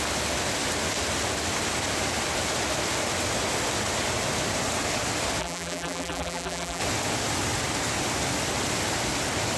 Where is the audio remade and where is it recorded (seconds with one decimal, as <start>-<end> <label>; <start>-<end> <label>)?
0.0-5.4 recorded; 5.4-6.8 remade; 6.8-9.6 recorded